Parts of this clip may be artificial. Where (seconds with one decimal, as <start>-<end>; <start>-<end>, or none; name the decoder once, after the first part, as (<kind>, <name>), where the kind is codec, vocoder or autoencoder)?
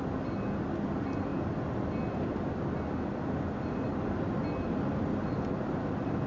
none